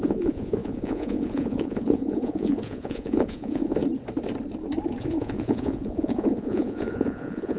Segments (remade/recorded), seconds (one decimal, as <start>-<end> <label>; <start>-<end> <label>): 0.0-3.8 remade; 3.8-5.0 recorded; 5.0-7.6 remade